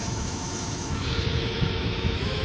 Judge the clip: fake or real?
fake